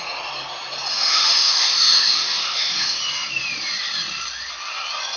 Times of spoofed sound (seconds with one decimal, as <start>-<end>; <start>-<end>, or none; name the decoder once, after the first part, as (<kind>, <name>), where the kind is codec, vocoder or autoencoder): 0.9-3.0 (autoencoder, DAC-VAE)